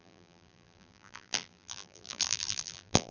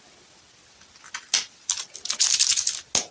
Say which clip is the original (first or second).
second